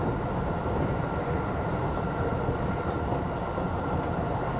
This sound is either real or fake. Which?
real